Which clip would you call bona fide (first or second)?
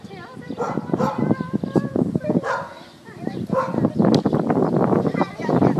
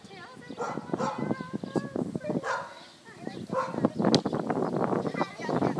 second